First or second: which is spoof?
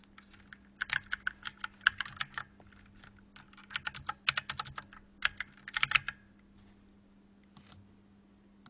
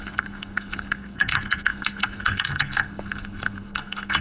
second